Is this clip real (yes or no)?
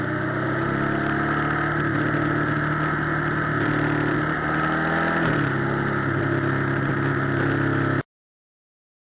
yes